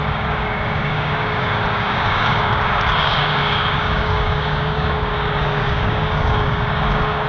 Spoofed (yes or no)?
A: yes